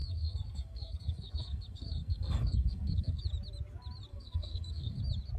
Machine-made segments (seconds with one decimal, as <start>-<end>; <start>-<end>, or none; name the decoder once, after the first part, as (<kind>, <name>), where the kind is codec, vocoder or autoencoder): 0.0-3.2 (codec, SNAC); 4.1-5.0